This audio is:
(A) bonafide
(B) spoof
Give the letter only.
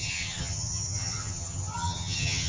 B